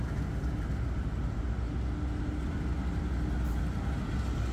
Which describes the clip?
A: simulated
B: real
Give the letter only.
B